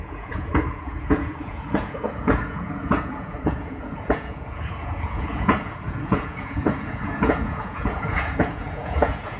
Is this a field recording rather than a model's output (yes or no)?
no